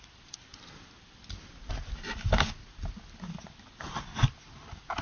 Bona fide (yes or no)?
yes